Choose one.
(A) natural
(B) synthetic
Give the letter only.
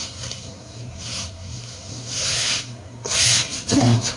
B